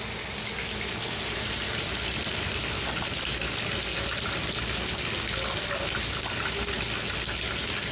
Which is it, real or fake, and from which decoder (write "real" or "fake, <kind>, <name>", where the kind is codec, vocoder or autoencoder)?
real